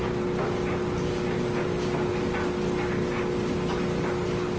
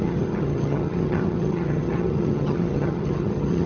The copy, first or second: second